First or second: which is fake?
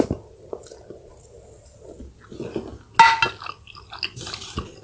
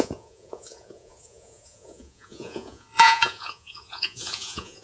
second